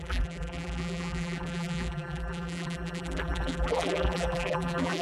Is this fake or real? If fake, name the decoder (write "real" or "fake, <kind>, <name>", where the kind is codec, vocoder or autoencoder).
fake, vocoder, BigVGAN v2